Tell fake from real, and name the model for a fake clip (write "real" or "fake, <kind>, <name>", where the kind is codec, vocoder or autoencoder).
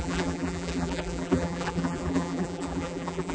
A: fake, vocoder, BigVGAN v2